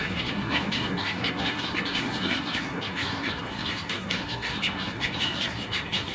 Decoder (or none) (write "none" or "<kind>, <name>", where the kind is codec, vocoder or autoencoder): codec, SNAC